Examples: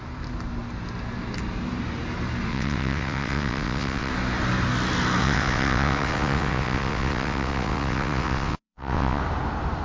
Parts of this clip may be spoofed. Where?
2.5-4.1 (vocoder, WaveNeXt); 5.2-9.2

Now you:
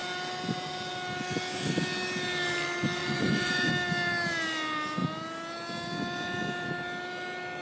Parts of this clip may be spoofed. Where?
3.0-3.7 (vocoder, Vocos)

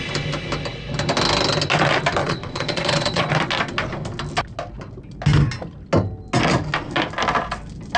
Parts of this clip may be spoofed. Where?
2.2-3.3 (vocoder, Vocos)

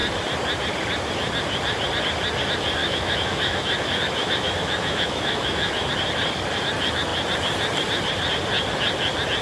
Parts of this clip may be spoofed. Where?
2.8-5.9 (autoencoder, DAC-VAE)

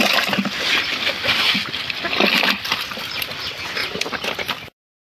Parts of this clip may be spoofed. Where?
none